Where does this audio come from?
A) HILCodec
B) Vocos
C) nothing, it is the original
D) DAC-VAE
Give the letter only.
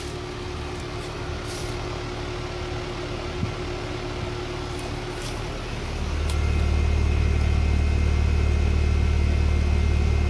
C